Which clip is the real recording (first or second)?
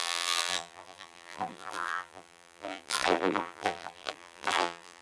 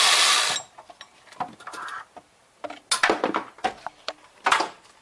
second